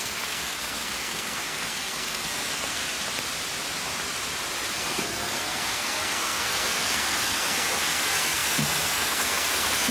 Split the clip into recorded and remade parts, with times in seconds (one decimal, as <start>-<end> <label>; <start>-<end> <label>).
0.0-2.8 remade; 2.8-4.7 recorded; 4.7-9.9 remade